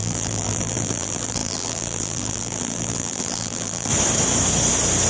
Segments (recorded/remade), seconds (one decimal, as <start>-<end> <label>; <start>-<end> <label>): 0.0-3.9 remade; 3.9-5.1 recorded